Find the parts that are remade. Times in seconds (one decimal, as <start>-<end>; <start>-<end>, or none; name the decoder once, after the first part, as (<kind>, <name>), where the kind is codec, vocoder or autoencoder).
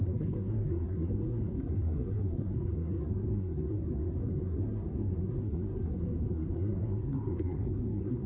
0.0-8.3 (codec, SNAC)